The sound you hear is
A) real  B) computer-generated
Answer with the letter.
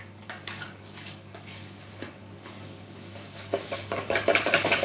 B